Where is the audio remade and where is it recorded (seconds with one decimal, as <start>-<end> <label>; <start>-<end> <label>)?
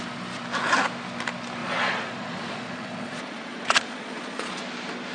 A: 0.0-1.6 recorded; 1.6-4.6 remade; 4.6-5.1 recorded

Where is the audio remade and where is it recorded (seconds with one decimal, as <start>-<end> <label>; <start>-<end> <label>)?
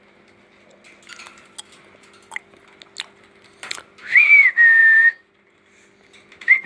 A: 0.0-6.7 recorded